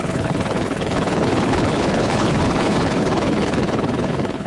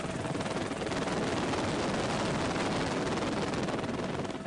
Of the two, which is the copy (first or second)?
first